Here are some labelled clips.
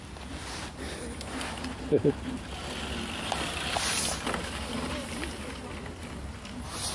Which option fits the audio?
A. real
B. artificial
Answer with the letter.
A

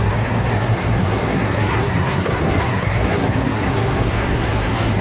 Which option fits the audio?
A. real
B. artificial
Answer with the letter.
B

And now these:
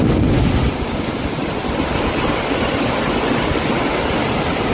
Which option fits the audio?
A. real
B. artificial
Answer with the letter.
A